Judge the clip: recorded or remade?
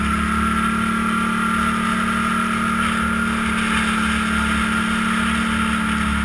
recorded